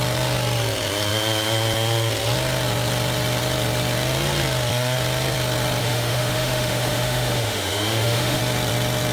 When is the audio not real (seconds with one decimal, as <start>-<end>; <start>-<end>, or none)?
5.8-8.4